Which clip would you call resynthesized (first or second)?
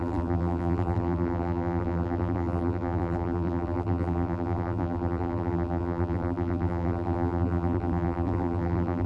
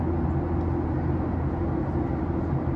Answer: first